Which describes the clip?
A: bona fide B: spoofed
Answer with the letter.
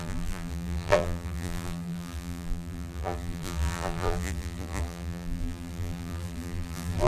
B